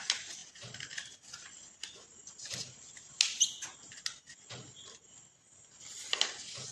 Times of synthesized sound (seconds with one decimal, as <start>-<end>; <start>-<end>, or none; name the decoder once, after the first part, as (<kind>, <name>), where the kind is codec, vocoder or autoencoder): none